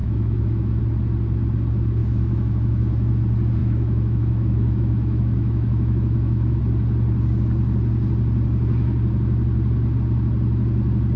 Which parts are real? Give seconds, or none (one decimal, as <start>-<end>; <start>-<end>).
0.8-2.0; 3.1-3.6; 6.6-11.2